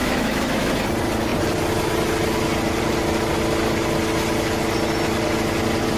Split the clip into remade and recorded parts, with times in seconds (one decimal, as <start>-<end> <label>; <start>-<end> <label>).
0.0-0.7 remade; 0.7-6.0 recorded